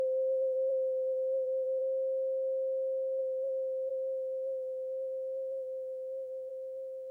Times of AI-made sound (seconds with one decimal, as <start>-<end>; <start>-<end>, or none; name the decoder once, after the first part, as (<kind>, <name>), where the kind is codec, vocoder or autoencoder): 0.0-1.8 (vocoder, BigVGAN v2); 3.2-7.1